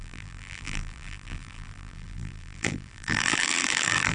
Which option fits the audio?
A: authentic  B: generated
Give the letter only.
B